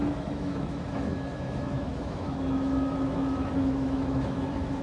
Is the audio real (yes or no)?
no